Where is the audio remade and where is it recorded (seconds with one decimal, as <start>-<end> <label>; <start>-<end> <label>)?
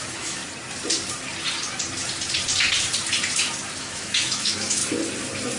0.0-0.4 remade; 0.4-3.8 recorded; 3.8-4.8 remade; 4.8-5.6 recorded